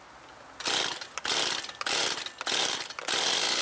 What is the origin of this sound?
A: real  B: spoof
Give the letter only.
A